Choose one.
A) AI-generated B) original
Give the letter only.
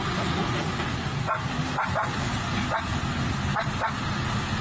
B